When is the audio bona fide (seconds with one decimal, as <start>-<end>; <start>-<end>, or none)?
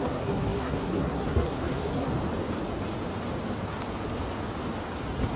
2.1-5.4